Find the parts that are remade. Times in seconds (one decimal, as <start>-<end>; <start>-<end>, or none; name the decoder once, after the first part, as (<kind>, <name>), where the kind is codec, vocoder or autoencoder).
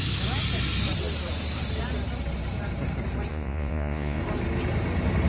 3.3-4.2 (vocoder, Vocos)